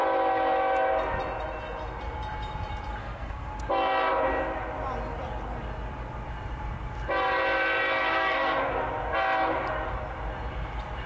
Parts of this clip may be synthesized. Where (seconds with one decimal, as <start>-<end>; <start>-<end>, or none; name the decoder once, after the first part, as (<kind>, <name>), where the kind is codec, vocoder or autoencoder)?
3.0-3.5 (codec, SNAC); 8.1-8.7